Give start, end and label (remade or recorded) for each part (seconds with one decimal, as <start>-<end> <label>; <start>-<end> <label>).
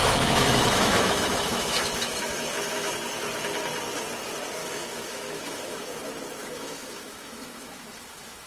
0.0-2.9 remade; 2.9-4.6 recorded; 4.6-5.9 remade; 5.9-6.4 recorded; 6.4-8.5 remade